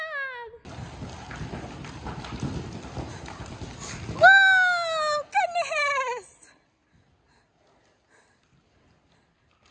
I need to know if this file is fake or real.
real